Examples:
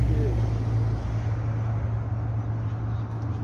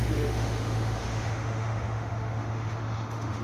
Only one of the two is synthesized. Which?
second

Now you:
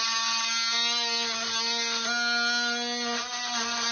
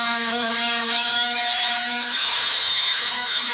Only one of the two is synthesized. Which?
second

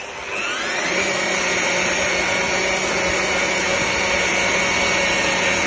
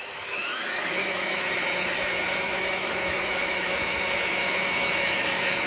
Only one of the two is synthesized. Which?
second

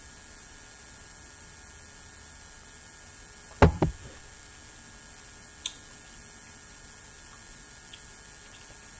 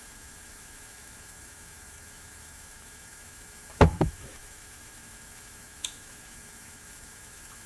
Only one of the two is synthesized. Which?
second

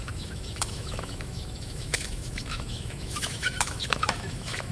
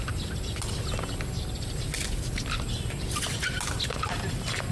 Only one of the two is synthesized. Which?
first